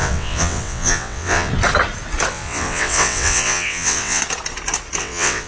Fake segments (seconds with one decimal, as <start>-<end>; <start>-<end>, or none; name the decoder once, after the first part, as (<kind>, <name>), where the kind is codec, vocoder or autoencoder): 0.0-1.5 (vocoder, WaveNeXt); 2.3-4.2; 5.0-5.5